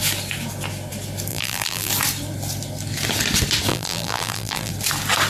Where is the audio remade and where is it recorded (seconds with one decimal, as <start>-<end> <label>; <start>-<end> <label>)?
0.0-1.3 recorded; 1.3-1.9 remade; 1.9-3.7 recorded; 3.7-4.7 remade; 4.7-5.3 recorded